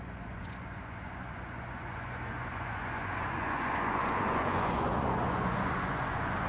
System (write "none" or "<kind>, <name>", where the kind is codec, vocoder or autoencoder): vocoder, Vocos